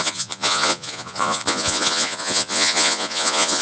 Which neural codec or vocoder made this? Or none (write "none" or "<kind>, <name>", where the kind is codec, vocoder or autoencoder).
vocoder, Vocos